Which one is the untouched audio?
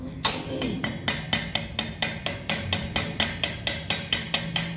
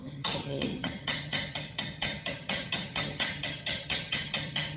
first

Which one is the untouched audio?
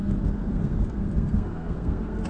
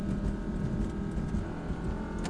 second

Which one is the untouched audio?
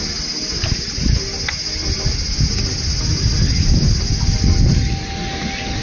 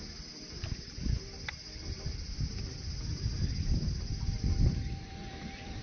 first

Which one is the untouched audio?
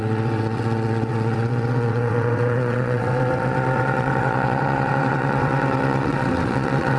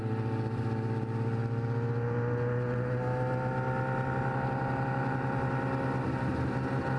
second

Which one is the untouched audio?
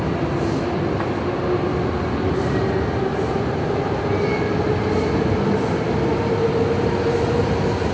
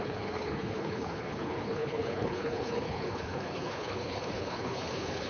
first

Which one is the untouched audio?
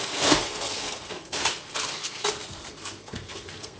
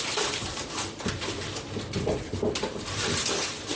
second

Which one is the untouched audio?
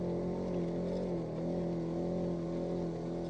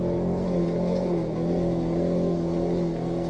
first